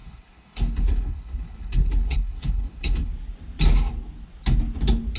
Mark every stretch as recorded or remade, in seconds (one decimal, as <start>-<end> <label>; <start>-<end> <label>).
0.0-3.1 remade; 3.1-5.2 recorded